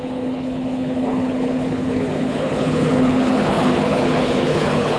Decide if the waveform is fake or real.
fake